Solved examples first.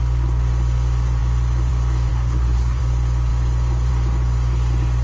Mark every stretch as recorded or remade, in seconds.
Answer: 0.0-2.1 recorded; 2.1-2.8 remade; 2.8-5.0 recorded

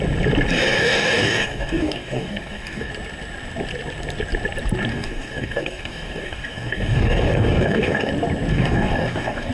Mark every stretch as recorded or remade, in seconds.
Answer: 0.0-0.8 recorded; 0.8-2.9 remade; 2.9-4.9 recorded; 4.9-8.1 remade; 8.1-8.5 recorded; 8.5-9.5 remade